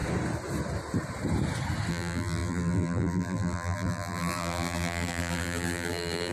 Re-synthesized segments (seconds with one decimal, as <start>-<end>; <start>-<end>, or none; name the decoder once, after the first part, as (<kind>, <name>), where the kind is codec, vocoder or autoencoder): 1.9-6.3 (vocoder, BigVGAN v2)